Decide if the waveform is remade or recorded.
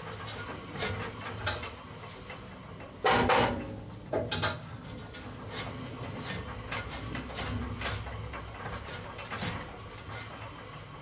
recorded